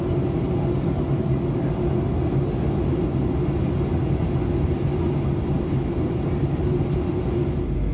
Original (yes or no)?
yes